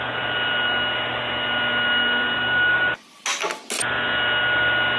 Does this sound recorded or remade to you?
recorded